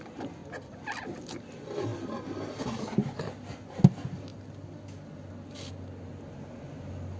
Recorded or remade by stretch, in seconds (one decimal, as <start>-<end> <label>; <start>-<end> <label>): 0.0-7.2 recorded